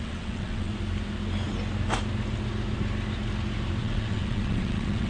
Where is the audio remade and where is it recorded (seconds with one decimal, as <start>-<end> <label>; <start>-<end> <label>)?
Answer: 0.0-0.7 remade; 0.7-3.8 recorded; 3.8-5.1 remade